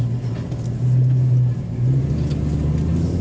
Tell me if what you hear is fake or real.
real